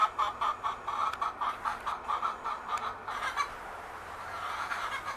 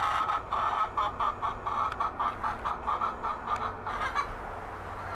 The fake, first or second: first